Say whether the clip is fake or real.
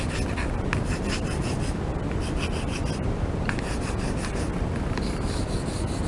real